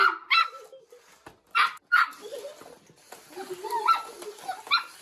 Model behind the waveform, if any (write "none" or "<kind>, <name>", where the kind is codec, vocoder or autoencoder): none